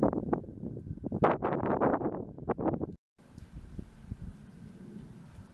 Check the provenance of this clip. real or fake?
real